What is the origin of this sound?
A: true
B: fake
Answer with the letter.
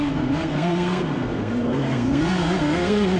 B